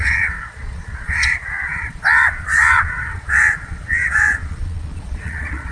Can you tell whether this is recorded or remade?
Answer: remade